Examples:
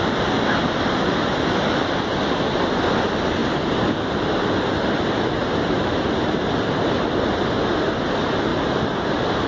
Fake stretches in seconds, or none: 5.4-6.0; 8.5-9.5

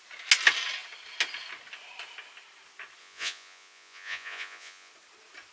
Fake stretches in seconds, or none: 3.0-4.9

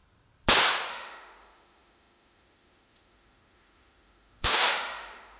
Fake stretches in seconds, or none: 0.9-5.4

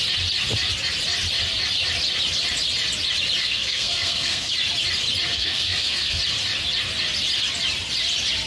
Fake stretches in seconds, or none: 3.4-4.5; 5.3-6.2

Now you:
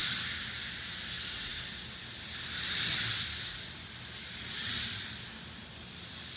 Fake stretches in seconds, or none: none

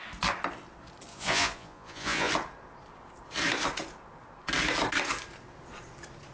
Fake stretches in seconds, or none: 1.1-2.3